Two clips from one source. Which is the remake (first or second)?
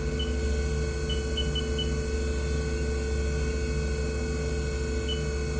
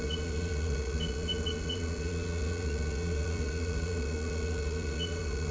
second